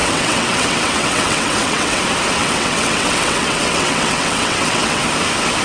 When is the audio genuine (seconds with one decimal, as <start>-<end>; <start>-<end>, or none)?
2.0-2.4; 5.0-5.6